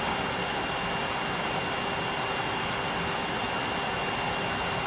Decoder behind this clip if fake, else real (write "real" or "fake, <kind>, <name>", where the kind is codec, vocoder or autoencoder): real